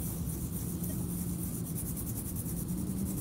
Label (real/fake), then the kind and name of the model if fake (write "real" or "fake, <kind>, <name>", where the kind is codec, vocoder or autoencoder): real